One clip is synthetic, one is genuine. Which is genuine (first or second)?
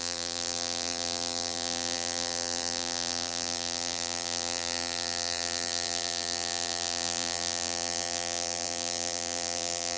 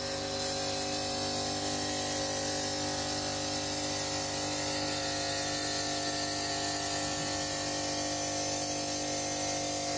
second